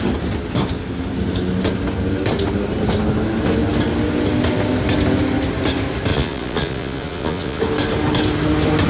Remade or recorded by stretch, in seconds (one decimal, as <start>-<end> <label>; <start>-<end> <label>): 0.0-6.1 recorded; 6.1-7.6 remade; 7.6-8.9 recorded